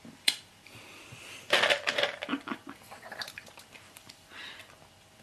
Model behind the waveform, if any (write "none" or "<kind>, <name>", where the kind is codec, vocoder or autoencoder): vocoder, BigVGAN v2